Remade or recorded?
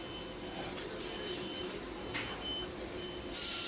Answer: recorded